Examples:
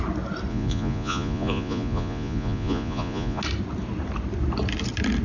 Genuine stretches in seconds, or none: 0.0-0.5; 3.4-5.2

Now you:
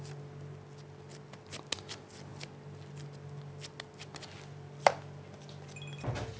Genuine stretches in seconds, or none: 0.0-6.4

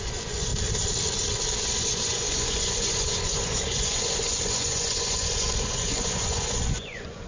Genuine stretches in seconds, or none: 0.5-1.6

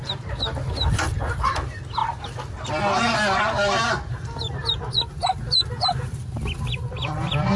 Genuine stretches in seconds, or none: 0.0-7.6

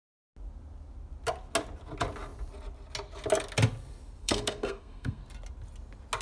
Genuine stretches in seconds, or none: 0.0-4.2; 5.2-6.2

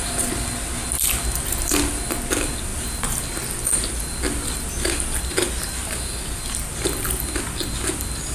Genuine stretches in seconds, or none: 0.0-8.3